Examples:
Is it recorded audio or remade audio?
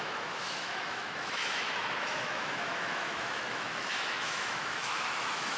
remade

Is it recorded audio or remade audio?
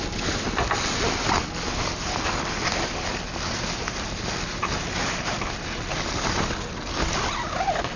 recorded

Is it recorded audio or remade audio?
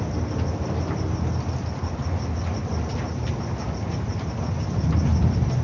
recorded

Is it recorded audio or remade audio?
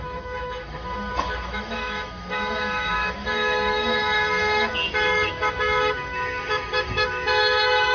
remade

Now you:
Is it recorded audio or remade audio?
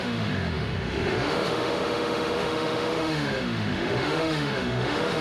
remade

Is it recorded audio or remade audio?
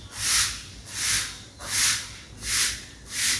recorded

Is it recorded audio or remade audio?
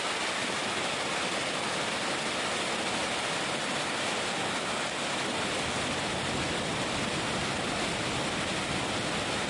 recorded